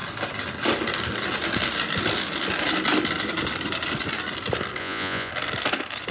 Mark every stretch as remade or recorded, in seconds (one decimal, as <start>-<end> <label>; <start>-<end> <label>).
0.0-4.8 recorded; 4.8-5.3 remade; 5.3-6.1 recorded